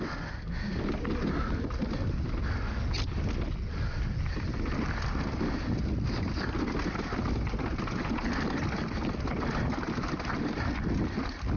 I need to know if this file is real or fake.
real